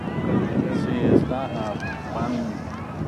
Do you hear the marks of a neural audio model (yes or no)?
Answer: no